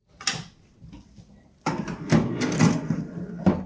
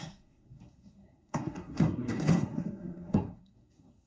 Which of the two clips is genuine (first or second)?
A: first